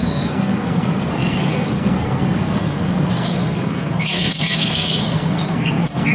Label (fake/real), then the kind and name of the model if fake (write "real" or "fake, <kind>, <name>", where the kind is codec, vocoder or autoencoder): fake, codec, SNAC